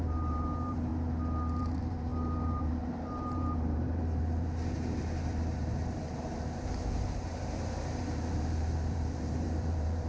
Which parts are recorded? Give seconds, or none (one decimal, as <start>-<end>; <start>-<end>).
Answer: 0.9-1.6